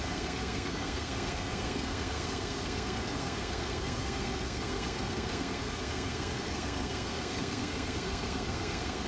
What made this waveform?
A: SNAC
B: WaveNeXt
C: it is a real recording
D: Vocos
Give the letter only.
A